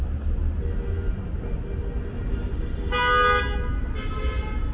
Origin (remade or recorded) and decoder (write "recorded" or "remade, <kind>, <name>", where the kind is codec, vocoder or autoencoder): recorded